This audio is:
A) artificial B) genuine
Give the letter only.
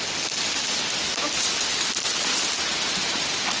B